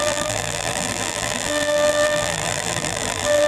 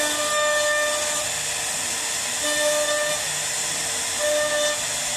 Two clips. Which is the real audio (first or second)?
second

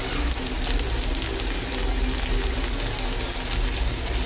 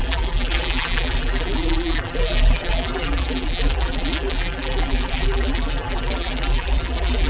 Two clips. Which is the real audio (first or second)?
first